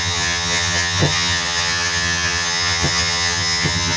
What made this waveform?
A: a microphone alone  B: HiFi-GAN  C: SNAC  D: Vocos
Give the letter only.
B